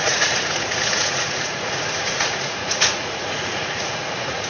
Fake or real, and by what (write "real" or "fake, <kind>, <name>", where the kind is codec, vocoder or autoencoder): fake, vocoder, Vocos